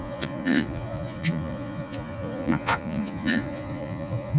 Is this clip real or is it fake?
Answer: fake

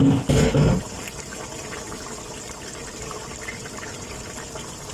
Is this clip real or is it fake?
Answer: real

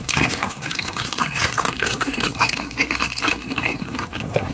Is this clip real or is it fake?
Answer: fake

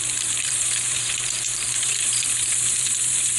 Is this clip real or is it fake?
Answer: fake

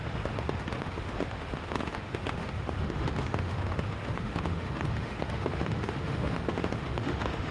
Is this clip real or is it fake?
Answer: fake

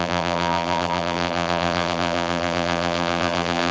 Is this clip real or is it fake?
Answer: fake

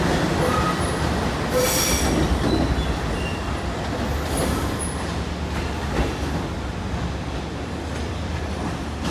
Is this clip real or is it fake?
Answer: real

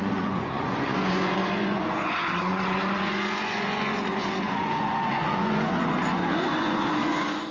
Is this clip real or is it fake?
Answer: fake